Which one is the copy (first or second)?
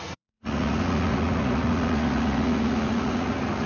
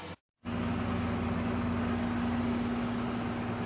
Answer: first